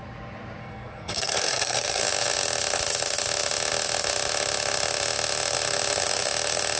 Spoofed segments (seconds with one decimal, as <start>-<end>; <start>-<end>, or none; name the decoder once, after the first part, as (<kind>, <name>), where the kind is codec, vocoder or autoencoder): 0.6-2.0 (codec, SNAC)